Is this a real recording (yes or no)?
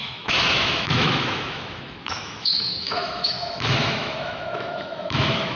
no